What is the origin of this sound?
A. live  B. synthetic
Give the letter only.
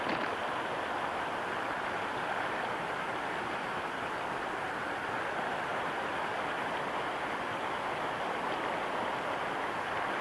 A